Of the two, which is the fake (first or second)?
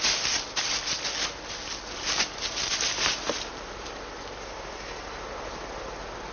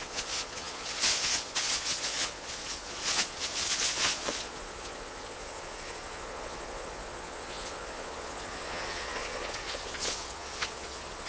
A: second